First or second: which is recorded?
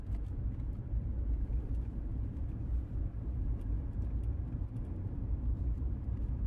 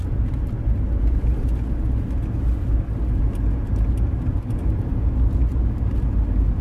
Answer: second